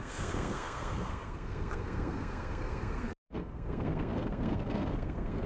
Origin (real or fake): fake